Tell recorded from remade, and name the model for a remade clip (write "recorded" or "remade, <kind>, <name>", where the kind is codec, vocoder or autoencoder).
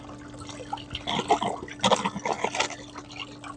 recorded